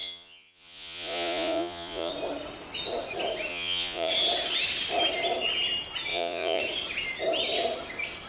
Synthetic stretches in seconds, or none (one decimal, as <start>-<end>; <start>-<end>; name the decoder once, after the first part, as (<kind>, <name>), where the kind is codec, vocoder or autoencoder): 0.0-2.1 (vocoder, Vocos); 3.5-4.1; 6.1-6.6

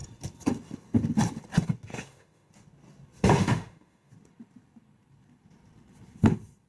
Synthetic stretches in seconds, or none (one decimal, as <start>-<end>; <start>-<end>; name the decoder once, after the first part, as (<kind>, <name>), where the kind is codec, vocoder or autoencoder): 1.9-2.5 (autoencoder, DAC-VAE); 3.4-4.1